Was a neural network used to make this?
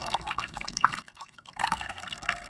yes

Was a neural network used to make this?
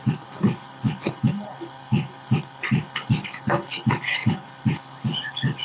yes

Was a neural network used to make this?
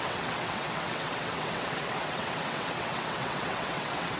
yes